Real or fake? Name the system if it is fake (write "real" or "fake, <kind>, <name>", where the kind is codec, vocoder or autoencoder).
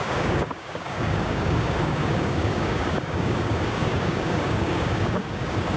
fake, codec, DAC